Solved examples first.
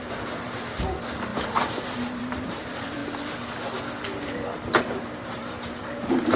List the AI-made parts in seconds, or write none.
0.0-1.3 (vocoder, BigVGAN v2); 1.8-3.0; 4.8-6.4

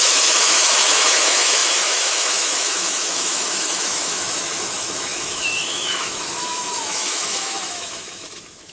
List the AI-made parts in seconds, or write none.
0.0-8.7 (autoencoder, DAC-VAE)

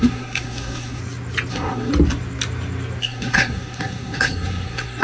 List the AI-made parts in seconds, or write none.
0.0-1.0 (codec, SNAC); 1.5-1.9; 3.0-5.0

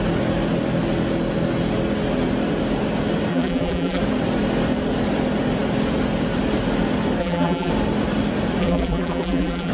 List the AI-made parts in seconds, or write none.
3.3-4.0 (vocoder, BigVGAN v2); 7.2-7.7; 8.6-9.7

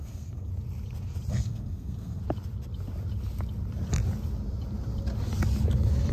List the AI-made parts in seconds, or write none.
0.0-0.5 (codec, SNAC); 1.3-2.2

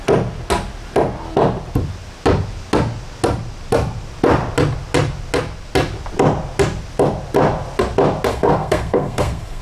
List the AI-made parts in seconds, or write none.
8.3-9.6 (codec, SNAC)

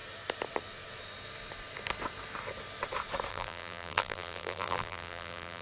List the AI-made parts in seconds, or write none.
3.3-5.6 (vocoder, BigVGAN v2)